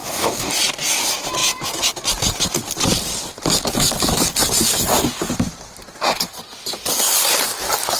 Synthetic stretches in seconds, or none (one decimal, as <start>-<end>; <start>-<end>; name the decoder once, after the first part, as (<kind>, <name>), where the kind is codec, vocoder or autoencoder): 0.0-0.5 (codec, DAC)